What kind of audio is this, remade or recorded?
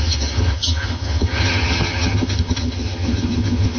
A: remade